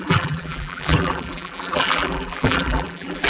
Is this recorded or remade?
remade